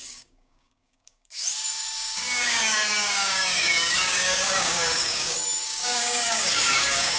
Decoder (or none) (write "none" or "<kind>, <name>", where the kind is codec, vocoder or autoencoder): codec, DAC